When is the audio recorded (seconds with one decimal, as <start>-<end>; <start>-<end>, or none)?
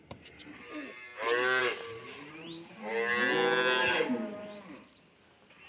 1.1-1.6; 2.9-3.8